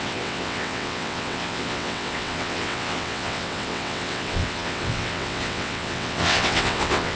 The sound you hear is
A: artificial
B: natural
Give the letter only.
A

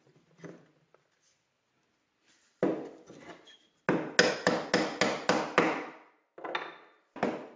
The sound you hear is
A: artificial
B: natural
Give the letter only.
B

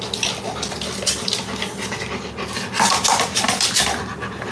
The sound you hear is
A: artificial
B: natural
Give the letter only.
B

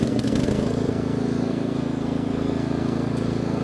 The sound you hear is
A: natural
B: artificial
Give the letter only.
B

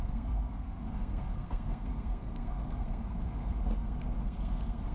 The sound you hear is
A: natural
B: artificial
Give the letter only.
B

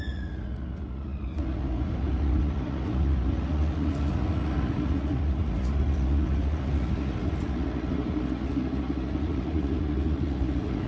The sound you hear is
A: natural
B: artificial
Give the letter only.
B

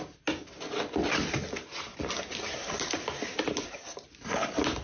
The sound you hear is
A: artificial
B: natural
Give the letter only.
B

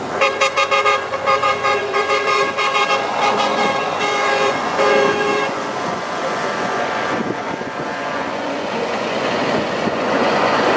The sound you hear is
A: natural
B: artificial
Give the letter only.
B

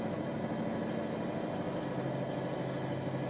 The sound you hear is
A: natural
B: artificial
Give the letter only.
A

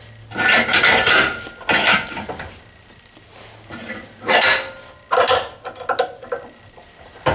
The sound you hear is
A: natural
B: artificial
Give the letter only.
A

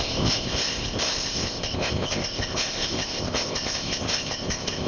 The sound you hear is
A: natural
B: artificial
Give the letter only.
B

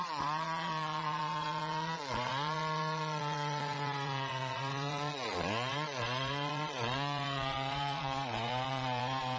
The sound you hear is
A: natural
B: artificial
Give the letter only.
B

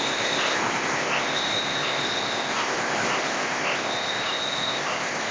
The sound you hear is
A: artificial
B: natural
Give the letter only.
A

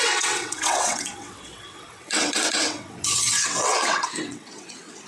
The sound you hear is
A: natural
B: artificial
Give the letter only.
B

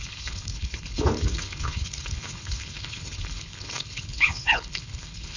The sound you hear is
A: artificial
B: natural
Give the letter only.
A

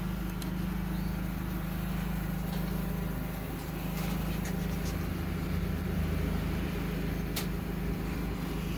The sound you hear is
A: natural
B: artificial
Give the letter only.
A